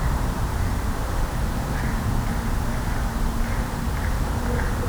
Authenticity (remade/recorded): recorded